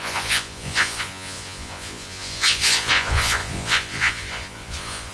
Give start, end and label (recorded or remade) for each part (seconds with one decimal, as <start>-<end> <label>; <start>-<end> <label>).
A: 0.0-5.1 remade